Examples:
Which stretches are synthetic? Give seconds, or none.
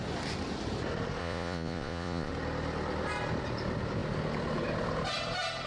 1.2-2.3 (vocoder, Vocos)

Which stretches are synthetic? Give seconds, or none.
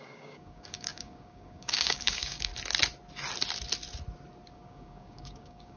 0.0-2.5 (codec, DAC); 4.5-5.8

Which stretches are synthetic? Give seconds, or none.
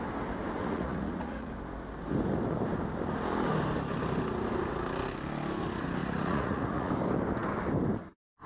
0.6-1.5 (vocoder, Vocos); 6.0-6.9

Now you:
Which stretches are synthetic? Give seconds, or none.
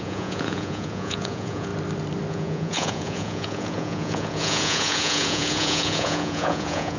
0.0-1.7 (vocoder, Vocos); 2.3-7.0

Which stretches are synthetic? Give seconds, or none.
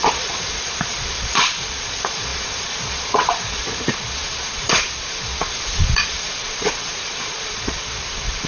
0.0-8.5 (vocoder, Vocos)